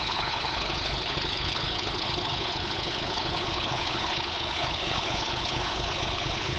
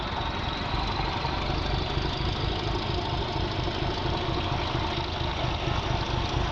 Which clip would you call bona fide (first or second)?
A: second